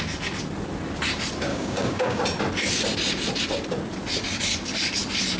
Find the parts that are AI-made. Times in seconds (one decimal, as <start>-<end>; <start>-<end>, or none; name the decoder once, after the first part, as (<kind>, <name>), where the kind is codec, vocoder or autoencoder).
1.5-2.2 (codec, DAC)